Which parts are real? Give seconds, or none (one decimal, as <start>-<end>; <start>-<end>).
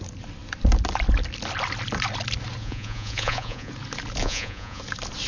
0.0-2.6; 3.7-4.2; 4.8-5.3